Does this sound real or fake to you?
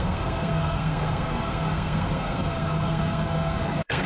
fake